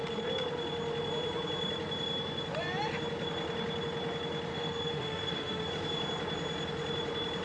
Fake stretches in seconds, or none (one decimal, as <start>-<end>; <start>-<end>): 4.5-5.7